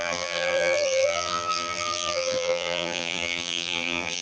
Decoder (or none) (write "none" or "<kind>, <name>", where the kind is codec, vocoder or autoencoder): vocoder, BigVGAN v2